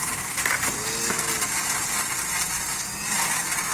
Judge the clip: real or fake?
real